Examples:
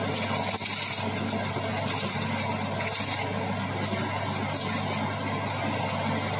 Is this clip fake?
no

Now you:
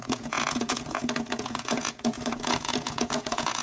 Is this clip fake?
yes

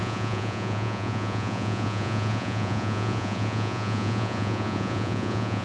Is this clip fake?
yes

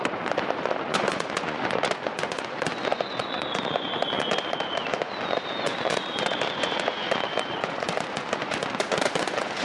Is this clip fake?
yes